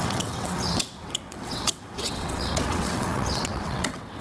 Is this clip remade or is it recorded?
remade